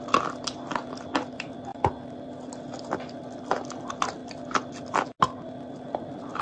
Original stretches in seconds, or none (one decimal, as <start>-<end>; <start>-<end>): 0.0-6.4